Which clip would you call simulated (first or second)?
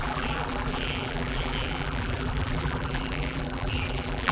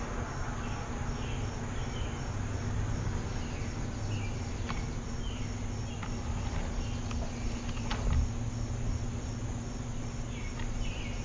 first